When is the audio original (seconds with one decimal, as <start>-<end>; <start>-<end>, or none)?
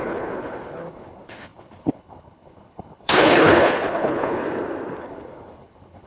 4.4-5.0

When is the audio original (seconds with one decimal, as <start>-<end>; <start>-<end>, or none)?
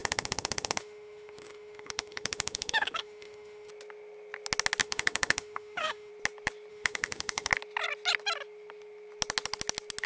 3.7-4.8; 6.1-6.7; 7.5-10.1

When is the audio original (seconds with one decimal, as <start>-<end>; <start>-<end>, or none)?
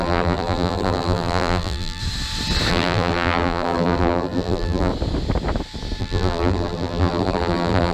2.0-2.7; 4.9-6.0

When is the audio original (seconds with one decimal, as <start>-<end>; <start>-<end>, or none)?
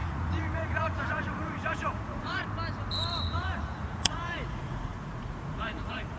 2.4-3.3